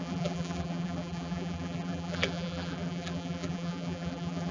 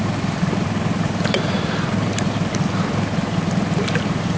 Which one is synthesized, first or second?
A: first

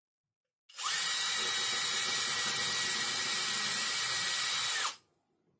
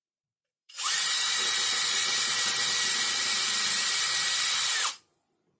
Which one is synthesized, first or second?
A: second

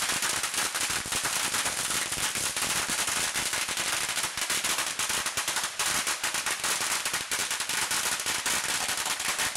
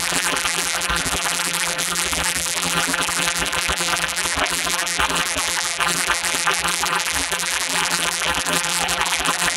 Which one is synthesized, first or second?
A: second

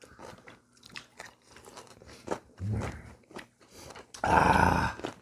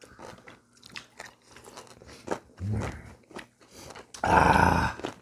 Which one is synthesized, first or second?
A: first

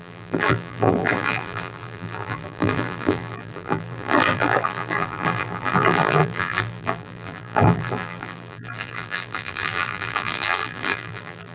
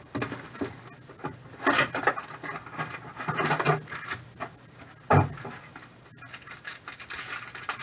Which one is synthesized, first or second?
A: first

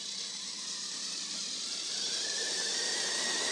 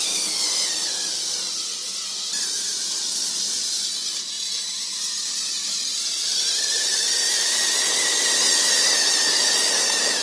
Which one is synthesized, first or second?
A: first